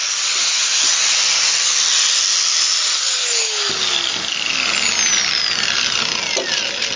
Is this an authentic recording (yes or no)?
yes